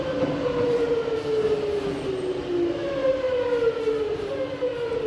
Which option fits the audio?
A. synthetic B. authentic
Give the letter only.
B